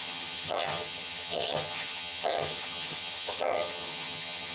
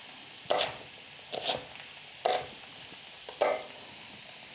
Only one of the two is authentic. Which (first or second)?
second